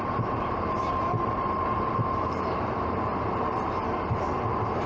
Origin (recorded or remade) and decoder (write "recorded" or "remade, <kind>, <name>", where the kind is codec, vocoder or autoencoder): remade, vocoder, BigVGAN v2